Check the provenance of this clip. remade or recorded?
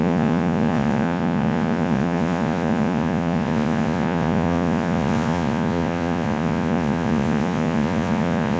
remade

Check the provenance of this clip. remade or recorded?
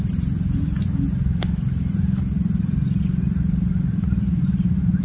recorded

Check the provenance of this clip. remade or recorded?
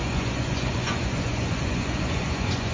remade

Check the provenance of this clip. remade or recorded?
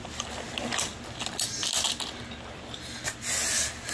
recorded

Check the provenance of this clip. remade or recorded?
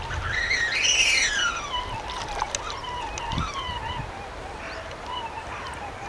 recorded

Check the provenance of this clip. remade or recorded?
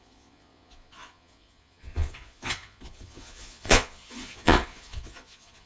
remade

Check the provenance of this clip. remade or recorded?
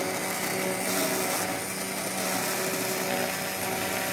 recorded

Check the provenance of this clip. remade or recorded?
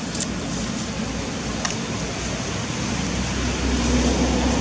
recorded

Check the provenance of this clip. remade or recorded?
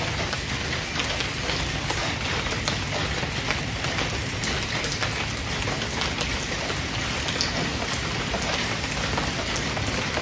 recorded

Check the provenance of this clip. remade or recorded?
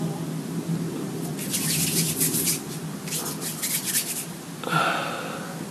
recorded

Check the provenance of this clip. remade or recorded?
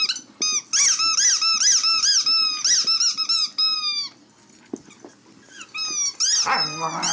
recorded